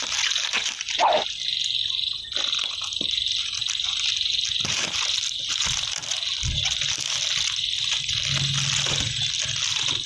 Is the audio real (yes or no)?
yes